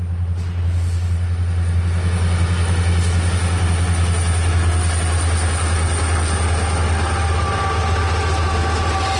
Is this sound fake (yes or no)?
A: no